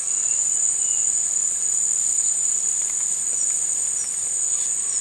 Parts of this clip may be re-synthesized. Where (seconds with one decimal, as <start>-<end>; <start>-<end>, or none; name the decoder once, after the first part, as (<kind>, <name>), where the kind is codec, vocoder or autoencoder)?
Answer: none